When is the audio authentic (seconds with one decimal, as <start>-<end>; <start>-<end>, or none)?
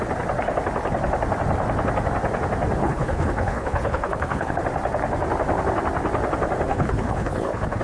0.0-2.8; 4.5-6.7